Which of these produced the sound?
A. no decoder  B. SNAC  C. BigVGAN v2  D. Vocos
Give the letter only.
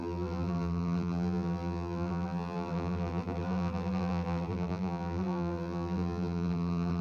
C